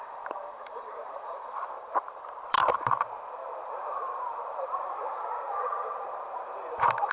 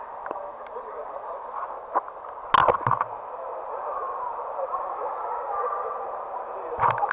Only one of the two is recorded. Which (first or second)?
second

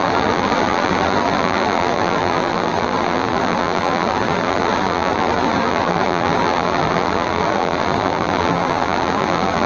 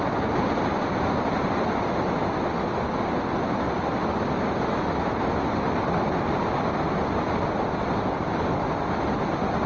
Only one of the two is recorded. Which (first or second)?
second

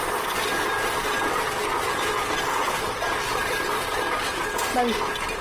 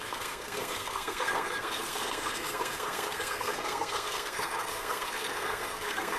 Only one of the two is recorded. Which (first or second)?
first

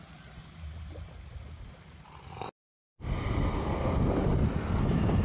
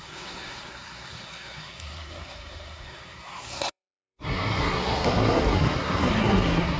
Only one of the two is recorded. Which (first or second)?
first